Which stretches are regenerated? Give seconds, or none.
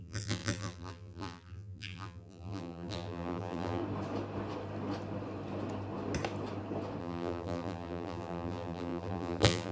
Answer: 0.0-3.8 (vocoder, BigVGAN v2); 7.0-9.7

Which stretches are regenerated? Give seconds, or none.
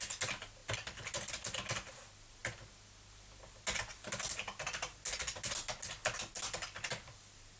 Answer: none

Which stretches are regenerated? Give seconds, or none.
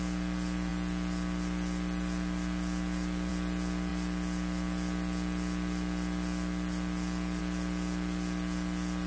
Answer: none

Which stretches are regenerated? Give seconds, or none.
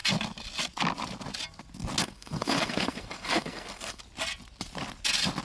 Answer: 2.0-4.0 (codec, SNAC)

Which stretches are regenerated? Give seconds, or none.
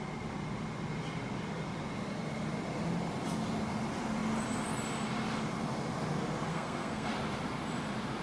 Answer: 6.5-7.1 (codec, SNAC)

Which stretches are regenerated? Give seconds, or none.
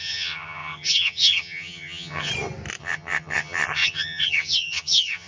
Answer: 0.0-2.3 (vocoder, HiFi-GAN); 2.8-5.3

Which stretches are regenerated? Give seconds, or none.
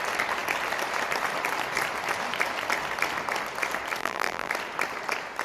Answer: 4.0-4.5 (vocoder, BigVGAN v2)